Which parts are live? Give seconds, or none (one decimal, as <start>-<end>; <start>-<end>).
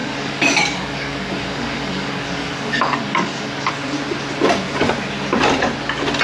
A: 3.7-6.2